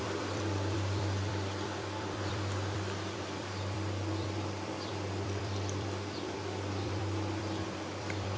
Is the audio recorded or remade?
remade